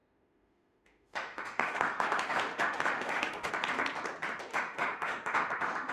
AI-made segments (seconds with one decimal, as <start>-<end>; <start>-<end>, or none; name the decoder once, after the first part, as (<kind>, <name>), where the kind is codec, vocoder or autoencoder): 0.0-3.5 (autoencoder, DAC-VAE); 4.5-5.9